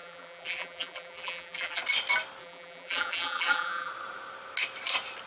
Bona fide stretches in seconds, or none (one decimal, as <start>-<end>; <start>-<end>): 1.8-2.4; 3.9-5.3